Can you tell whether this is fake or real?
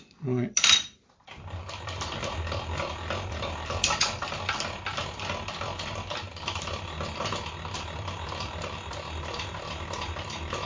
fake